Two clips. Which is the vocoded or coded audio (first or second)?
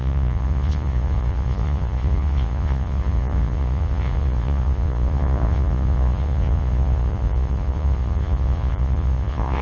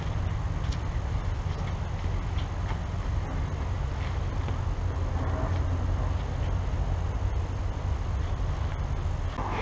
first